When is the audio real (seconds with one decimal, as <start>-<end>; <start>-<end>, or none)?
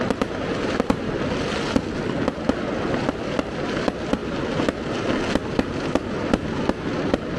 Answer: 0.0-7.4